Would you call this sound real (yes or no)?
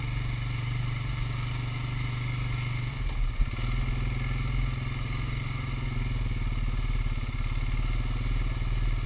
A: yes